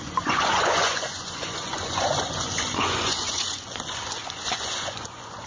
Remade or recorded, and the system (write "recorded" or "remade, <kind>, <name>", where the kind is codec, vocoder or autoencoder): remade, vocoder, Vocos